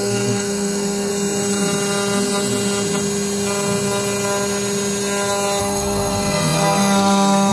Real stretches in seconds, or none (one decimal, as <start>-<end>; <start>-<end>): 1.1-5.6